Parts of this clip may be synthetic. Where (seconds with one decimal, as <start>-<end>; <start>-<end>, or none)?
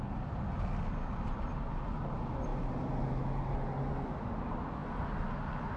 none